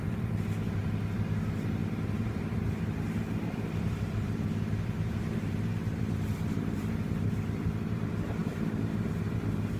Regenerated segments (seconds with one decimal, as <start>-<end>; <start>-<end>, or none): 0.0-9.8